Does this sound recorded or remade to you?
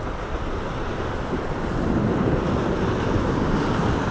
recorded